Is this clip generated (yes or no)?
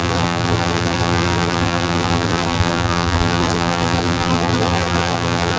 yes